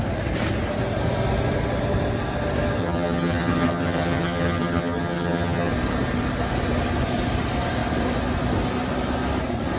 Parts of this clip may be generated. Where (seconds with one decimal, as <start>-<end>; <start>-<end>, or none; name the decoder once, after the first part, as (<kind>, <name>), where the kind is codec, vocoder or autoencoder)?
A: 2.8-5.7 (vocoder, HiFi-GAN)